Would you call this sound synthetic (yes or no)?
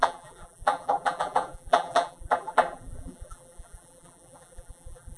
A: yes